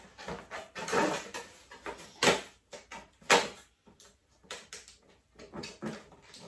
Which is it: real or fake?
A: real